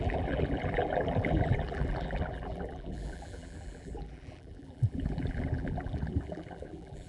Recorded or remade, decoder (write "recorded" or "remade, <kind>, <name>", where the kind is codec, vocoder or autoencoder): remade, vocoder, BigVGAN v2